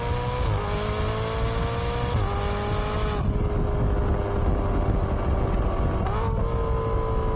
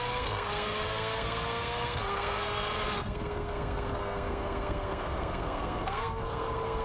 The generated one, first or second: second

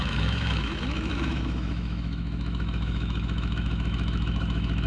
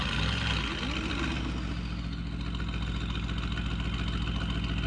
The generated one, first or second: first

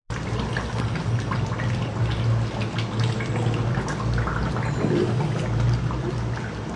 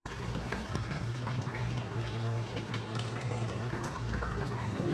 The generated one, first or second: second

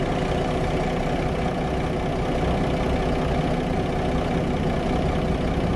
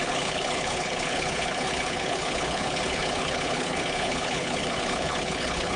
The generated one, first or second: second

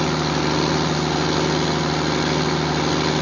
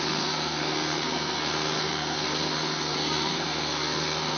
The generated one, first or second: second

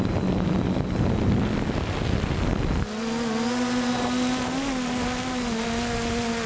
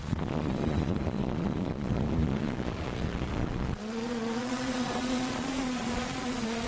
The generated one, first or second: second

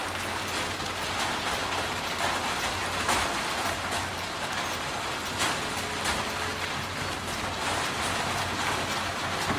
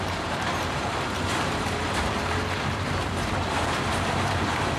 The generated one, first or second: second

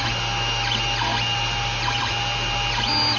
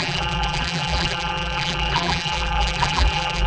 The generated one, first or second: second